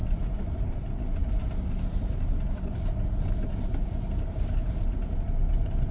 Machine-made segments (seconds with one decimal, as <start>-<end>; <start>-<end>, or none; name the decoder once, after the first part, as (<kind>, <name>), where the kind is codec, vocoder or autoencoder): 0.0-0.7 (vocoder, BigVGAN v2); 1.2-3.7